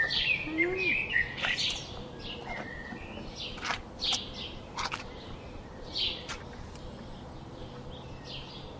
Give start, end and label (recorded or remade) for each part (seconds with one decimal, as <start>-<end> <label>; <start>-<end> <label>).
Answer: 0.0-8.8 recorded